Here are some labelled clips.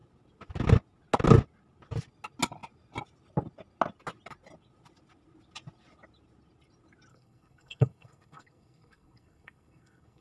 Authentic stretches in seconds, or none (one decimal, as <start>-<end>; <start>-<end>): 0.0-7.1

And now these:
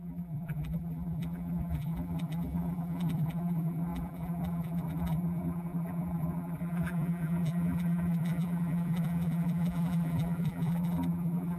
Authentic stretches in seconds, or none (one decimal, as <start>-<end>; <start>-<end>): none

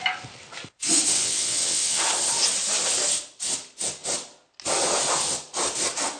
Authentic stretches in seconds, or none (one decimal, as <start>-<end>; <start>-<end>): 0.0-1.1; 2.0-6.2

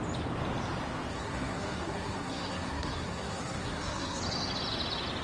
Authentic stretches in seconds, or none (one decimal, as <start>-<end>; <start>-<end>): 0.0-1.1; 4.2-5.2

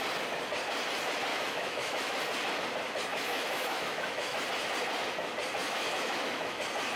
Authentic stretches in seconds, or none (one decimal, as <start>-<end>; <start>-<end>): 0.0-1.3; 2.2-3.1; 4.4-5.6; 6.6-7.0

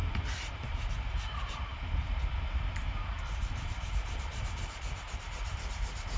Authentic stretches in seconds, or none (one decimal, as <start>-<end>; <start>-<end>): 1.7-2.7

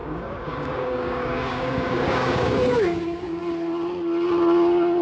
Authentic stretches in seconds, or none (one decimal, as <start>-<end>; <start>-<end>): 3.4-5.0

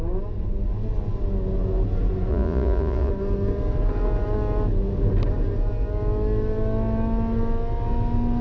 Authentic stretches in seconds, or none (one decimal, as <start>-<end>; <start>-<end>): 0.0-2.3; 3.1-8.4